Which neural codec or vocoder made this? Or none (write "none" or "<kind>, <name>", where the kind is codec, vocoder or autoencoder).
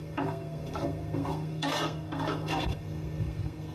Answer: codec, SNAC